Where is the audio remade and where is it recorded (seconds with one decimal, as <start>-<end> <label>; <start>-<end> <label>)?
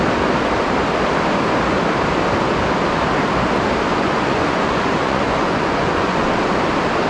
0.0-3.9 recorded; 3.9-6.3 remade; 6.3-7.1 recorded